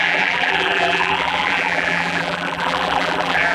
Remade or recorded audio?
remade